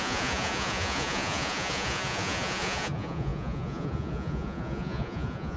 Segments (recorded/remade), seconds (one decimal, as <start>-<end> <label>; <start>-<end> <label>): 0.0-5.6 remade